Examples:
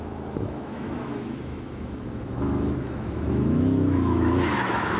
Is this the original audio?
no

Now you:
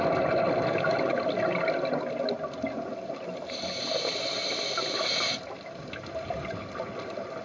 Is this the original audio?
yes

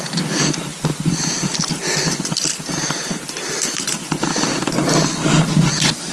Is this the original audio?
yes